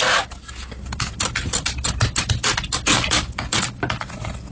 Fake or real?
real